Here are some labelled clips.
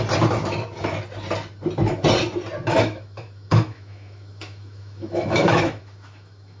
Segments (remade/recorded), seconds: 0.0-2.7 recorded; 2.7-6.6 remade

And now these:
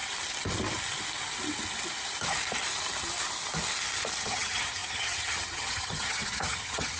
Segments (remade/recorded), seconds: 0.0-4.2 recorded; 4.2-7.0 remade

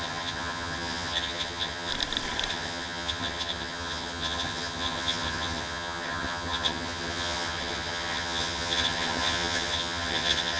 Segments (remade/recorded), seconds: 0.0-1.9 remade; 1.9-2.5 recorded; 2.5-10.6 remade

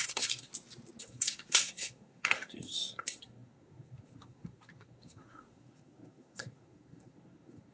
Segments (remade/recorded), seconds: 0.0-0.5 remade; 0.5-1.0 recorded; 1.0-7.7 remade

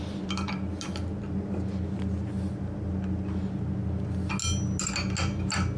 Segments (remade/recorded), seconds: 0.0-5.8 recorded